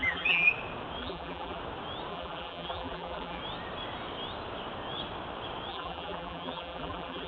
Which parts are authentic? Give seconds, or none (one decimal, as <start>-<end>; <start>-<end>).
0.5-1.0; 1.6-2.1; 3.4-5.7